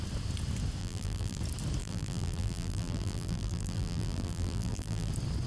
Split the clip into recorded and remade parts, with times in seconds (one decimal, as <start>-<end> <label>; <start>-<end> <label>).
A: 0.0-0.8 recorded; 0.8-1.4 remade; 1.4-1.8 recorded; 1.8-5.1 remade; 5.1-5.5 recorded